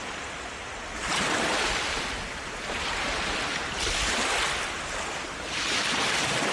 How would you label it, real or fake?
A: real